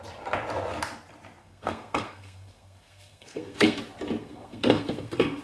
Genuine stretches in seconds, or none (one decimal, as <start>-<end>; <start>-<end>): 0.0-1.4; 3.8-4.2